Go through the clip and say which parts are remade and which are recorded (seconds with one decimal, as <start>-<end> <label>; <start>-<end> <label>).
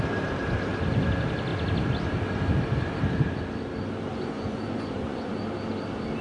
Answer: 0.0-4.1 recorded; 4.1-5.4 remade; 5.4-6.2 recorded